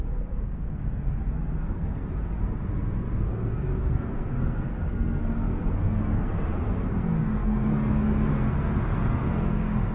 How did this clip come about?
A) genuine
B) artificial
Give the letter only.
B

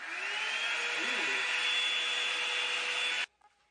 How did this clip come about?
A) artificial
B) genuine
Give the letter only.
B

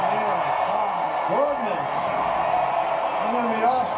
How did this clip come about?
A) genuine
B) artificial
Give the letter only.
A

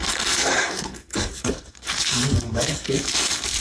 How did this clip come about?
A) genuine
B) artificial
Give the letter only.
B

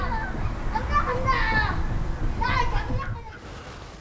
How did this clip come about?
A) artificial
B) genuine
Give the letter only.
B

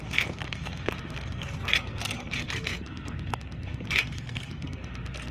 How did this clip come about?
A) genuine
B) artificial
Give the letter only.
B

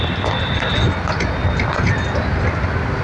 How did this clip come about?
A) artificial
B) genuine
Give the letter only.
B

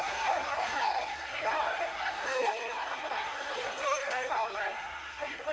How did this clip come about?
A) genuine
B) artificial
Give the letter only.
B